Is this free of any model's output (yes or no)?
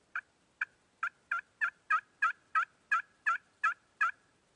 yes